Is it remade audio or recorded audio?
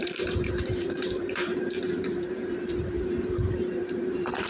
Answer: remade